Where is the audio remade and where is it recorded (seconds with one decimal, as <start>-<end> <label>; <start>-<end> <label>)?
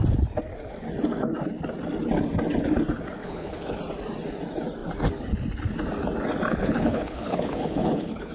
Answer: 0.0-3.2 recorded; 3.2-3.8 remade; 3.8-6.5 recorded; 6.5-8.3 remade